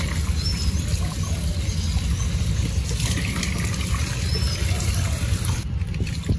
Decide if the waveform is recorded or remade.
recorded